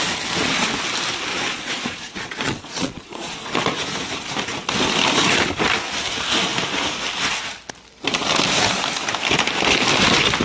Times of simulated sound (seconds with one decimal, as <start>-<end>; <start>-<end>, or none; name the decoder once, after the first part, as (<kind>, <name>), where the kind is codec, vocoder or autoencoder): 1.3-3.4 (vocoder, Vocos)